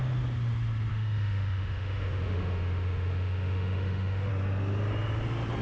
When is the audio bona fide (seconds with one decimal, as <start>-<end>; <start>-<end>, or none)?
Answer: 0.0-0.9; 4.3-5.6